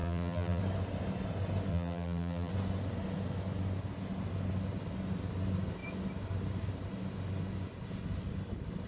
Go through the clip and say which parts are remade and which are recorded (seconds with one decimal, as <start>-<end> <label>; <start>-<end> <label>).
0.0-0.6 remade; 0.6-1.7 recorded; 1.7-2.5 remade; 2.5-8.9 recorded